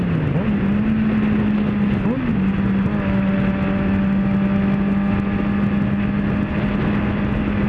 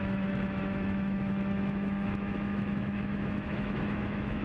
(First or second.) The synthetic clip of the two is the second